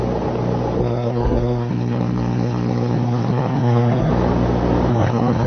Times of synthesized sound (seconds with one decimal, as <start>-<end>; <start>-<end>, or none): 0.8-4.1; 4.9-5.5